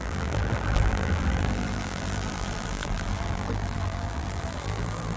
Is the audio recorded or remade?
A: remade